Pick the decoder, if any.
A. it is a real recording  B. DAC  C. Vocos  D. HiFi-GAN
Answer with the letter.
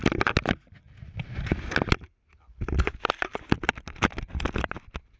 A